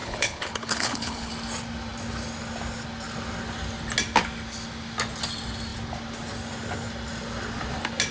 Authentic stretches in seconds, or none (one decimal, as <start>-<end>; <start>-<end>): 1.3-8.1